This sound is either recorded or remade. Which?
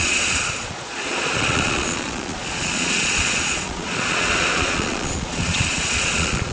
remade